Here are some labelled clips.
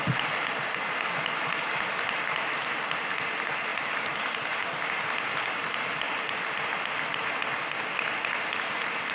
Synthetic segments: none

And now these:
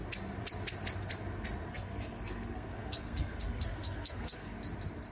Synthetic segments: 1.7-4.5 (codec, SNAC)

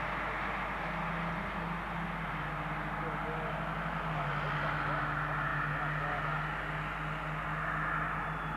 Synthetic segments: none

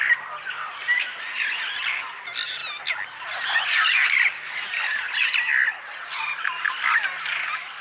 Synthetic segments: none

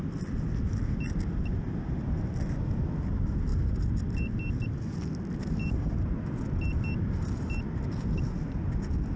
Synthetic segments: none

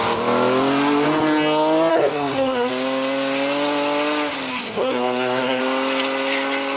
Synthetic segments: 1.9-2.7 (codec, SNAC); 4.5-5.6

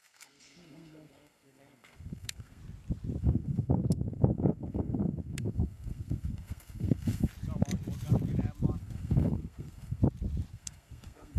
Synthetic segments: 0.0-2.6 (codec, SNAC); 3.2-7.3; 8.8-10.0; 10.5-11.4